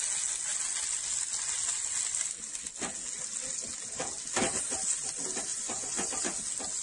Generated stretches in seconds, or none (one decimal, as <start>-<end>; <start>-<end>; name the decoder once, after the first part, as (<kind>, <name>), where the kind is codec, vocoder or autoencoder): 5.5-6.1 (vocoder, Vocos)